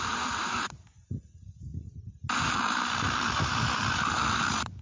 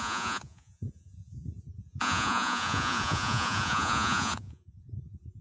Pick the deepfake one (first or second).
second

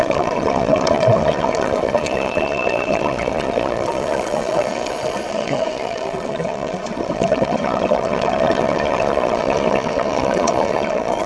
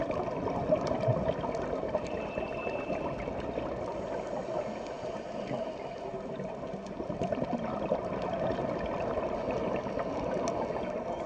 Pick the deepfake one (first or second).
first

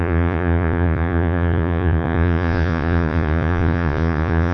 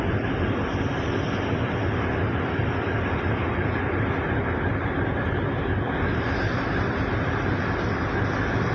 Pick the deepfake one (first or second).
first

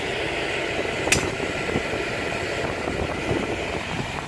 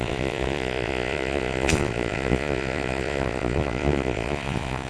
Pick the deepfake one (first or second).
second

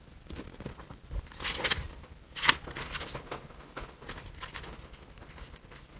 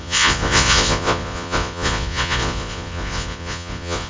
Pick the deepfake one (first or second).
second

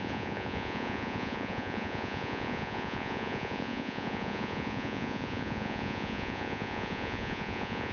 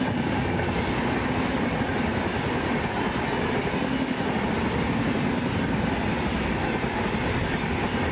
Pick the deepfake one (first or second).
first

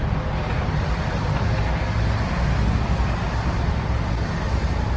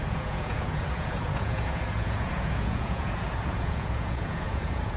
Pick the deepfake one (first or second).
second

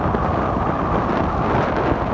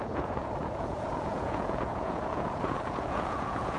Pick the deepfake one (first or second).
second